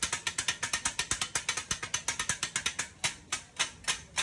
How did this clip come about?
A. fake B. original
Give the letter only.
B